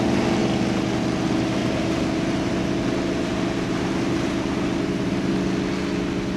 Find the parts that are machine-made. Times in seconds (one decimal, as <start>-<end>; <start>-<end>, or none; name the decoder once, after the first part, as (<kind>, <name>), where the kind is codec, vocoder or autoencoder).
1.6-2.5 (vocoder, BigVGAN v2); 3.3-5.3